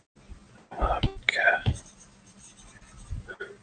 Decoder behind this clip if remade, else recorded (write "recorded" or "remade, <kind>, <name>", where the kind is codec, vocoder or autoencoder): recorded